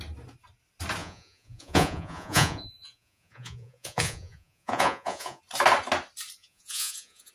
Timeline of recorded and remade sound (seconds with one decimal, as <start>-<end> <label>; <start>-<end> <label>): 0.0-1.0 recorded; 1.0-5.4 remade; 5.4-6.4 recorded; 6.4-7.3 remade